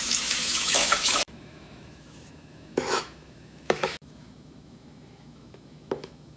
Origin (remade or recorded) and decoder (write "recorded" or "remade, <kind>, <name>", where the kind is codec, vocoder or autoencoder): remade, autoencoder, DAC-VAE